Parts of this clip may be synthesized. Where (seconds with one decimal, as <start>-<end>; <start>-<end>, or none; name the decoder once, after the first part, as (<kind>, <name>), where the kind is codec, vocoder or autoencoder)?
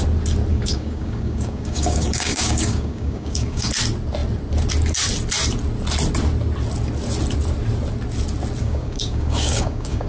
0.5-3.7 (codec, DAC); 8.6-10.1